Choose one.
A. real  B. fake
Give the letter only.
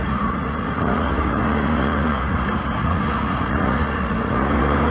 B